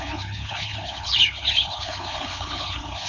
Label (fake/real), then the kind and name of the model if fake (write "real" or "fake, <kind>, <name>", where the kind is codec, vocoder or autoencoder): fake, codec, HILCodec